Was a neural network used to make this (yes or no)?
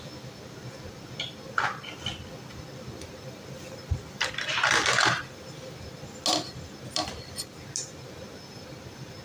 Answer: no